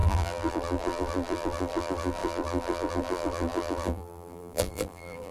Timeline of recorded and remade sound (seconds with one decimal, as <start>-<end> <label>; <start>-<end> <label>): 0.0-5.3 remade